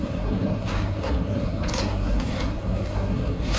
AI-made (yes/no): yes